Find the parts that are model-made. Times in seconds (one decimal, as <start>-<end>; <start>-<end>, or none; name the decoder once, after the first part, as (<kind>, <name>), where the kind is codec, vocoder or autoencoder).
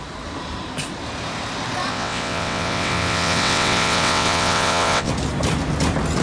1.9-5.1 (vocoder, WaveNeXt)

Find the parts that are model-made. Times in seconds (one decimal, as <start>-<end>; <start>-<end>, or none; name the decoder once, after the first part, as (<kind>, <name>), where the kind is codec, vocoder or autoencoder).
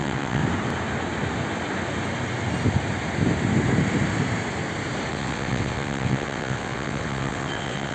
0.0-0.4 (vocoder, WaveNeXt); 5.1-7.9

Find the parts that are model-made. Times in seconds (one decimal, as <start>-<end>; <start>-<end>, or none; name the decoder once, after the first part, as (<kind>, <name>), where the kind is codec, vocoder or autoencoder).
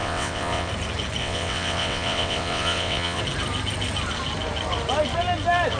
0.0-0.7 (vocoder, WaveNeXt); 1.2-3.2